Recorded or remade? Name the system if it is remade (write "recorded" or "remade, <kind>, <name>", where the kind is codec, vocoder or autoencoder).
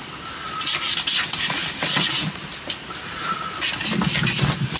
recorded